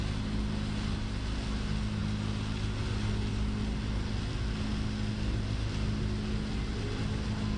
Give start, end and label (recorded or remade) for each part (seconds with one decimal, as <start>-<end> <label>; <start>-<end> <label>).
0.0-7.6 recorded